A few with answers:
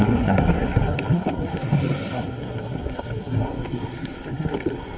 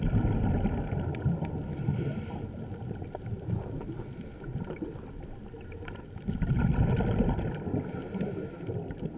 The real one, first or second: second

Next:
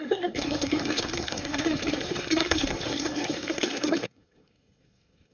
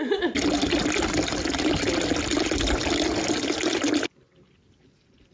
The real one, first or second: second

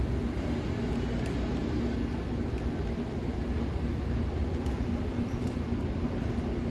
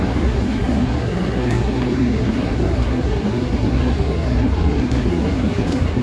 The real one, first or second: first